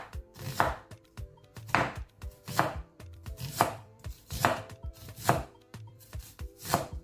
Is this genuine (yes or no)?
no